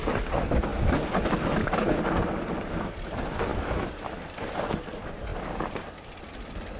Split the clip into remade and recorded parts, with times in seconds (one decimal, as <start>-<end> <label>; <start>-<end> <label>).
0.0-0.7 recorded; 0.7-2.0 remade; 2.0-3.5 recorded; 3.5-4.7 remade; 4.7-6.8 recorded